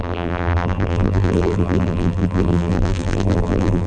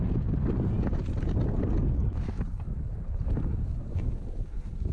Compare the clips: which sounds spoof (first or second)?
first